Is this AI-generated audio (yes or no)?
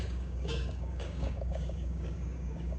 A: yes